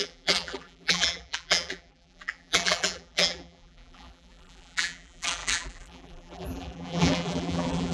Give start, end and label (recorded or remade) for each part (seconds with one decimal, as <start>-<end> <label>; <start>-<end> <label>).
0.0-7.9 remade